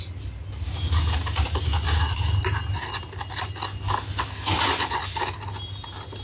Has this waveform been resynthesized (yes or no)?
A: no